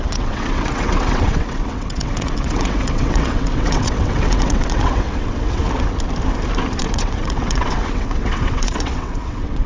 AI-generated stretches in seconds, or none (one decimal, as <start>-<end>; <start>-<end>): 0.0-5.6; 6.8-9.7